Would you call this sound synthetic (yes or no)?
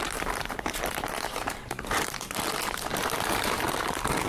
yes